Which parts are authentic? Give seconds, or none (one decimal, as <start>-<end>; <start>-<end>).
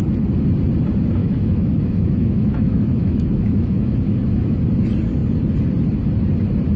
0.0-1.2; 4.6-6.8